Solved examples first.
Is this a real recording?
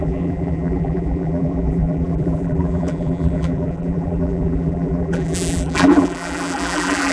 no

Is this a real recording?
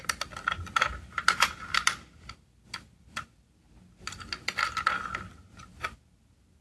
yes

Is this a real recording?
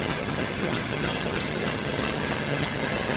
no